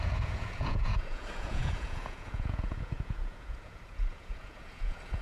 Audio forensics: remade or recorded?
remade